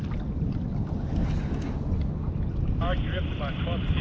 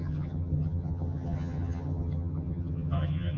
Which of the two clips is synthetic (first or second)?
second